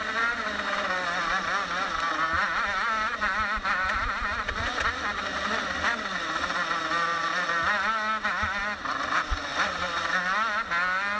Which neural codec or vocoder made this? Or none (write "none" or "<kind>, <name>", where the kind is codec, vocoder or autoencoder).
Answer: none